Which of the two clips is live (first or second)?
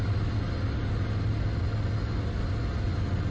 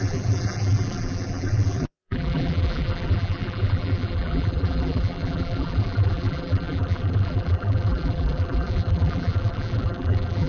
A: first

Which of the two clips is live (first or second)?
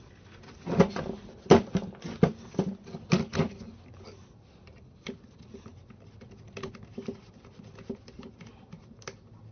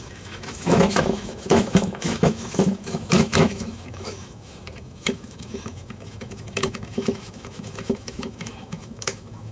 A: first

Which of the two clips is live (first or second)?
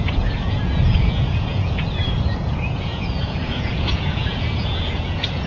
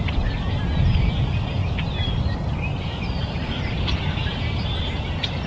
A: second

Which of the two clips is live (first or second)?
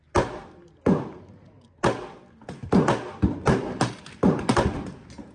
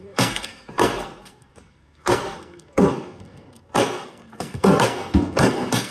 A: first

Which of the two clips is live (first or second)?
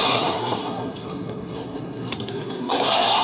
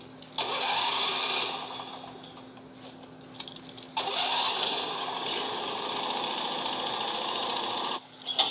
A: second